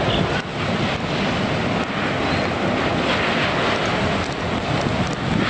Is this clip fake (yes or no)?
no